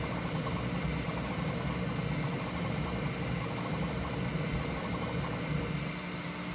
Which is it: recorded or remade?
recorded